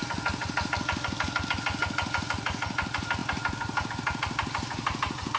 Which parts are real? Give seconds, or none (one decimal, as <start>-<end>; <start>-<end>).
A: 0.0-5.4